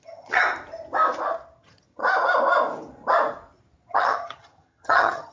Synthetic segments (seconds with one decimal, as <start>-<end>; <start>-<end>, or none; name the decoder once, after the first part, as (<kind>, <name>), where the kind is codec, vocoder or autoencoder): 0.0-0.4 (vocoder, HiFi-GAN); 1.6-2.0; 3.9-5.3